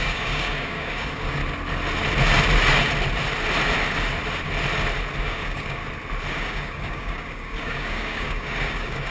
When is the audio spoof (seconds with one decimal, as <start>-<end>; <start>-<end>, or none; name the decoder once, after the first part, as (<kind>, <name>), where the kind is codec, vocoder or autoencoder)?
0.0-1.4 (codec, DAC); 5.2-5.8; 6.3-9.1